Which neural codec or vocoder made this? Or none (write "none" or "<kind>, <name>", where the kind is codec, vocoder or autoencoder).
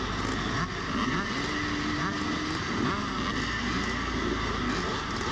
none